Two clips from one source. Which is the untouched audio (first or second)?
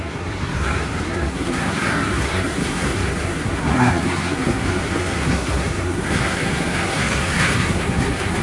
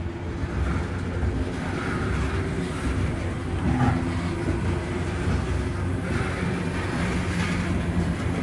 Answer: second